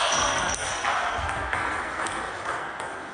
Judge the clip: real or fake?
fake